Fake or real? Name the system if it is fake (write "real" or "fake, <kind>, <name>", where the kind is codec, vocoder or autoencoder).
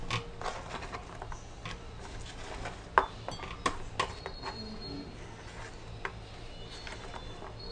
real